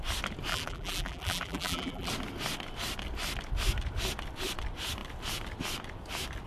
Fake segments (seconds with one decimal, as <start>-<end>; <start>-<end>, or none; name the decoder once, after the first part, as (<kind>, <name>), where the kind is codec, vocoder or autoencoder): 0.5-2.1 (vocoder, BigVGAN v2)